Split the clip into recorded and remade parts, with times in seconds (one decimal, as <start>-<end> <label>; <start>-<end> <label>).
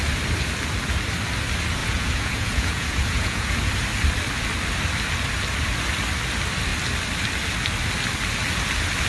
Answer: 0.0-1.8 recorded; 1.8-3.7 remade; 3.7-9.1 recorded